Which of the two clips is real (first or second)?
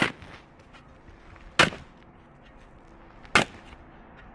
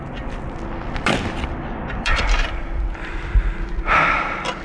first